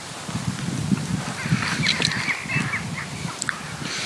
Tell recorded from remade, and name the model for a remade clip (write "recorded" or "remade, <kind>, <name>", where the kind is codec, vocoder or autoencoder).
recorded